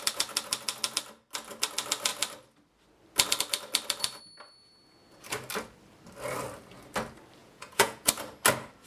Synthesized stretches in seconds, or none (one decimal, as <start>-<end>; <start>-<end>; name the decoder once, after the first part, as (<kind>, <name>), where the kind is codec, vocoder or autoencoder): 7.4-8.1 (vocoder, Vocos)